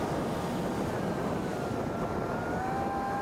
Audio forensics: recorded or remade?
recorded